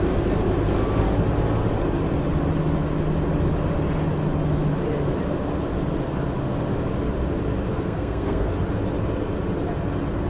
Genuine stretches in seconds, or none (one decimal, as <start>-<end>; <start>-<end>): 0.0-7.7; 8.5-10.3